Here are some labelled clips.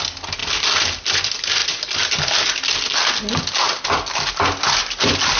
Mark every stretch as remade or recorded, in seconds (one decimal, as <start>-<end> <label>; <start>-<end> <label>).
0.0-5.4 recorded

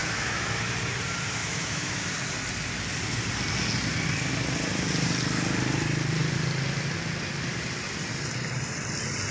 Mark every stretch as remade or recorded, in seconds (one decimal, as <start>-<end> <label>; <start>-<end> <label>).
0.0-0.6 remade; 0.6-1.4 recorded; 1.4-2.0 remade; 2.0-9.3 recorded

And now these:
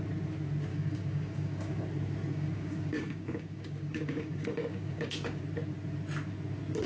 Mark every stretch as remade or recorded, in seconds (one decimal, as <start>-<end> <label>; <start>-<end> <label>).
0.0-0.7 recorded; 0.7-1.8 remade; 1.8-2.3 recorded; 2.3-5.4 remade; 5.4-6.9 recorded

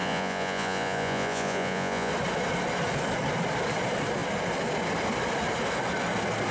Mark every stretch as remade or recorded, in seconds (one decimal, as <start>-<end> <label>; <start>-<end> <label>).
0.0-2.1 remade; 2.1-6.5 recorded